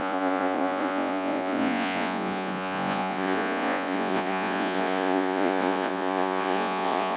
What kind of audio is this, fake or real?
fake